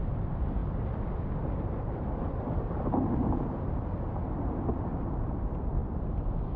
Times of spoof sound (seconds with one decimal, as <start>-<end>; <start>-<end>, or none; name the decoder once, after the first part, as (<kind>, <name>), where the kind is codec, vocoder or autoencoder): none